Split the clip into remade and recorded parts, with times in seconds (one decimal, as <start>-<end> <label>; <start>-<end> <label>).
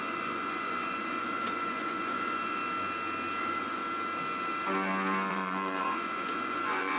0.0-2.6 remade; 2.6-3.4 recorded; 3.4-3.8 remade; 3.8-5.3 recorded; 5.3-7.0 remade